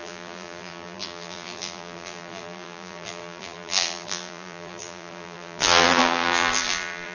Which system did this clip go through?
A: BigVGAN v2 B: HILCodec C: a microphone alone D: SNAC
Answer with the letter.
A